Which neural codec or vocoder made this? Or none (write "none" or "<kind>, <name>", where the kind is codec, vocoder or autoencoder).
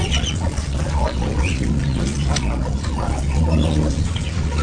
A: vocoder, Vocos